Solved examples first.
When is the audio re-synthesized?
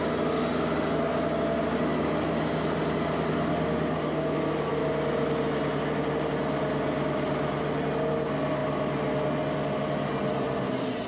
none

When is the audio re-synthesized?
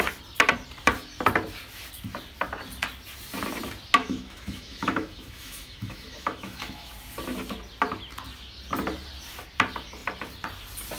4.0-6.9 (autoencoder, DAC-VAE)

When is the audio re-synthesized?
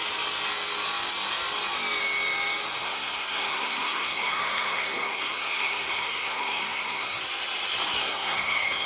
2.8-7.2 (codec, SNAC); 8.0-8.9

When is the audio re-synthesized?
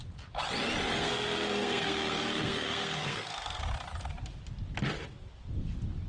1.0-3.6 (codec, SNAC)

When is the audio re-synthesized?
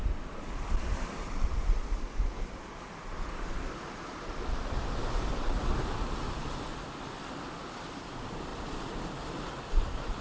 none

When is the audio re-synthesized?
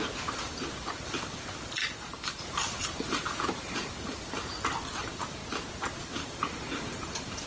0.0-5.4 (vocoder, BigVGAN v2); 6.0-7.5